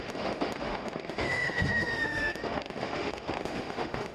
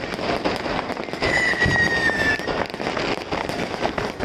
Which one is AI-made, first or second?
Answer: first